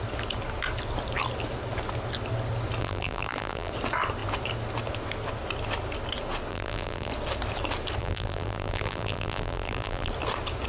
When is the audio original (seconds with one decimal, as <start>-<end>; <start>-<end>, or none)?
0.0-2.8; 3.7-6.5; 7.1-8.0; 10.1-10.7